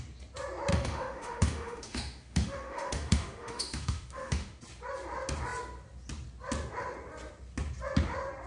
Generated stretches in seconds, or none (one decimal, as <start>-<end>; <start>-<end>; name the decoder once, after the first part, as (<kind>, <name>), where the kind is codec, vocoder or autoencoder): 0.7-4.6 (autoencoder, DAC-VAE)